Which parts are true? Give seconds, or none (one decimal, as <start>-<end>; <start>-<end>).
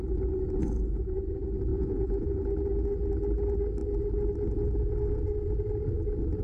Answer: 0.0-0.6; 1.2-1.7; 2.4-6.4